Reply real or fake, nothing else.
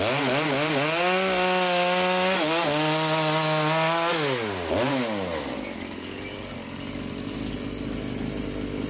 real